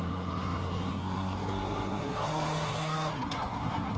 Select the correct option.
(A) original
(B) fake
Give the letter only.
B